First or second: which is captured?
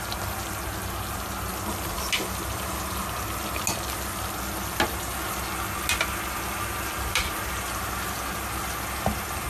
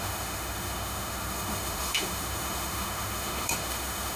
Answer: first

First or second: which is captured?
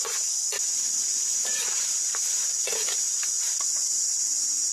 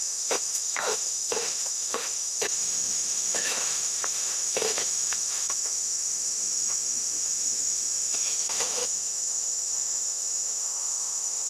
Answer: first